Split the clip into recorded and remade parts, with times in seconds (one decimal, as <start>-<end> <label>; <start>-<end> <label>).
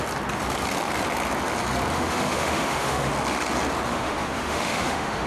0.0-1.9 recorded; 1.9-3.1 remade; 3.1-3.9 recorded; 3.9-5.3 remade